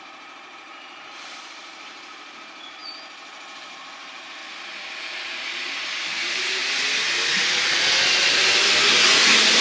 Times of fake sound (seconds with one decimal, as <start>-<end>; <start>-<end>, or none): 0.0-2.8; 3.6-4.4; 5.4-6.6; 8.9-9.6